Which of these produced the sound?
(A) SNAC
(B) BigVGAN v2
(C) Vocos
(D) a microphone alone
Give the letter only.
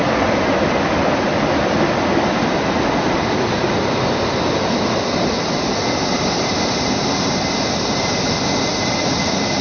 D